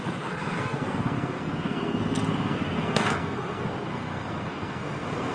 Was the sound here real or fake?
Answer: fake